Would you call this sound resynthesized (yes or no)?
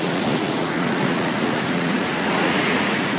yes